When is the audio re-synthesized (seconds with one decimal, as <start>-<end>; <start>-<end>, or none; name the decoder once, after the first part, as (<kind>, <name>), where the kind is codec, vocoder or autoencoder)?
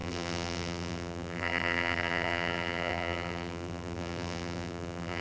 0.0-5.2 (vocoder, BigVGAN v2)